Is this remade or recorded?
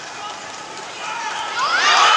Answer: remade